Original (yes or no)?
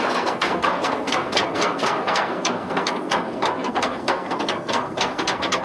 no